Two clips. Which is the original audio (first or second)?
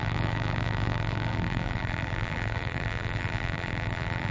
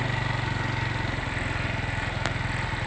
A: second